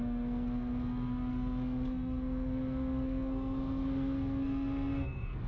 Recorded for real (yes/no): no